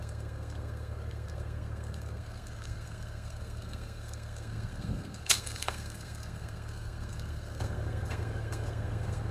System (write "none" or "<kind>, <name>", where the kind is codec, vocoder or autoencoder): codec, SNAC